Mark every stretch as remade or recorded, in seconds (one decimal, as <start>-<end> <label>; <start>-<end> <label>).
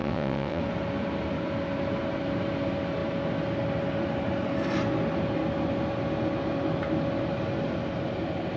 0.0-0.6 remade; 0.6-8.6 recorded